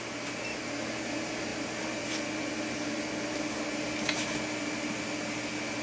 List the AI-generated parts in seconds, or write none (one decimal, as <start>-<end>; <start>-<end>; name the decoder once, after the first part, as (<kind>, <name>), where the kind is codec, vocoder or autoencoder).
none